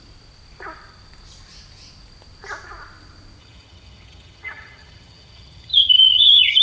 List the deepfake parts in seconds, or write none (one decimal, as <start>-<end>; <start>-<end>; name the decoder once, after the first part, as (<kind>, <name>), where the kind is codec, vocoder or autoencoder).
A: 3.4-6.6 (vocoder, HiFi-GAN)